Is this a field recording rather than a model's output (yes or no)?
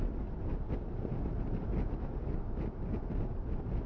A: yes